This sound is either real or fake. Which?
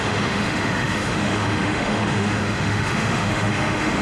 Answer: fake